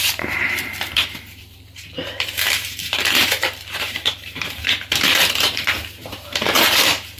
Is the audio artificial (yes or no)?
yes